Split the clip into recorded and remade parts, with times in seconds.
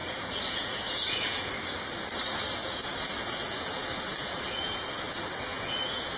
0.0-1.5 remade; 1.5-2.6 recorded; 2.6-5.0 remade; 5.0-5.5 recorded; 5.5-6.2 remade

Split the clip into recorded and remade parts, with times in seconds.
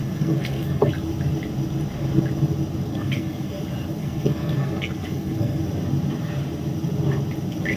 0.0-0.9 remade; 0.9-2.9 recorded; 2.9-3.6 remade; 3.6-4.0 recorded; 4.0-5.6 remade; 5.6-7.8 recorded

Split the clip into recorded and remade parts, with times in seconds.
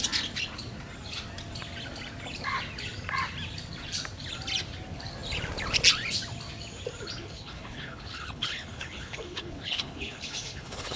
0.0-7.2 recorded; 7.2-11.0 remade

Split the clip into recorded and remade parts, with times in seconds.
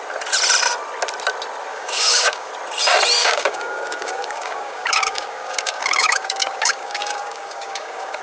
0.0-1.7 recorded; 1.7-2.5 remade; 2.5-3.2 recorded; 3.2-8.2 remade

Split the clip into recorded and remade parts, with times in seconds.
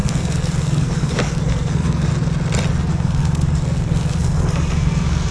0.0-2.1 remade; 2.1-2.9 recorded; 2.9-5.3 remade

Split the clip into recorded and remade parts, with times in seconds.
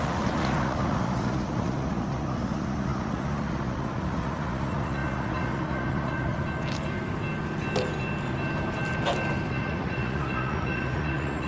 0.0-6.4 remade; 6.4-9.5 recorded; 9.5-11.5 remade